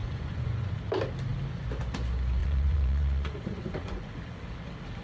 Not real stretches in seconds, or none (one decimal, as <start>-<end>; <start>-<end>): 0.0-0.7; 2.4-4.1